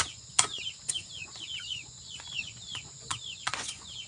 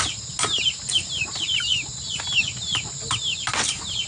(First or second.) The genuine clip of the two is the second